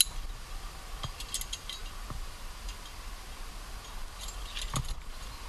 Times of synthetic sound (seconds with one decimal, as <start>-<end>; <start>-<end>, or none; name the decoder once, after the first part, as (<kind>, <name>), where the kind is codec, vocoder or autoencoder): none